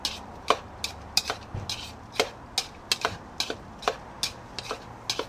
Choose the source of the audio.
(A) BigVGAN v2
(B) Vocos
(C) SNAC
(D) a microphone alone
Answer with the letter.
D